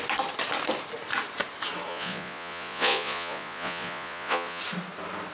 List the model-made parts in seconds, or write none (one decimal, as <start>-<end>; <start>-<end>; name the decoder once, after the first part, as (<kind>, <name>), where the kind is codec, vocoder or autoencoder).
1.9-4.6 (vocoder, Vocos)